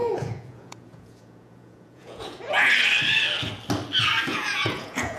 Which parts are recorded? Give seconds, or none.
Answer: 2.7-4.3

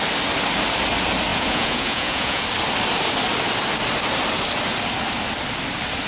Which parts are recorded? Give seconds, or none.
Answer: 0.0-1.3; 2.4-6.1

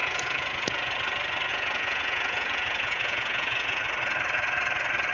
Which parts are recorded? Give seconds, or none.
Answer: 0.9-1.5; 3.8-5.1

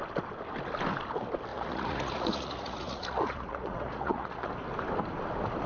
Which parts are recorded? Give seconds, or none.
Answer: 0.0-1.5; 4.5-5.7

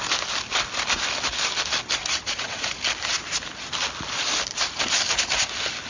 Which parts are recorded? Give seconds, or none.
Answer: 0.0-2.0; 2.8-5.9

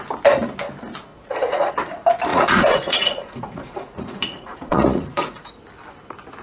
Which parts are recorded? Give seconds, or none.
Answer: 0.0-1.1; 1.7-2.3; 5.6-6.4

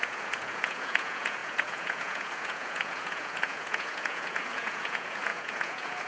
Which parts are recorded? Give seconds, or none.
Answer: none